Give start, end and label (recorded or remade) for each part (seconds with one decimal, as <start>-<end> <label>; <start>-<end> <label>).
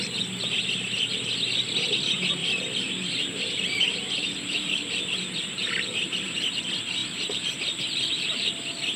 0.0-2.4 recorded; 2.4-6.6 remade; 6.6-7.0 recorded; 7.0-8.5 remade; 8.5-9.0 recorded